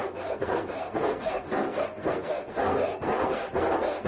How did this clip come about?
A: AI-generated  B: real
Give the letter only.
A